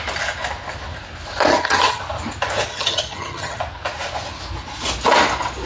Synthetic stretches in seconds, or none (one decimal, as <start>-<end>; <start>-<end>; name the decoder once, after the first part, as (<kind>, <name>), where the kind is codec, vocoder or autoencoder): 1.5-2.0 (vocoder, HiFi-GAN); 2.7-3.6